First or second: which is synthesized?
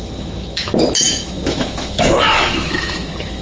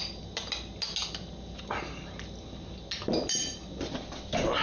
first